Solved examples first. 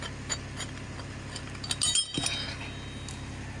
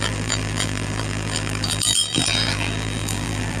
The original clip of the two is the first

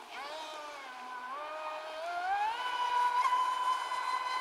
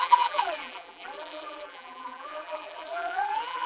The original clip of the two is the first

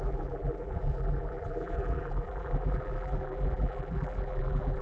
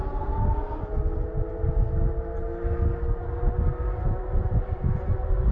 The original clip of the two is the second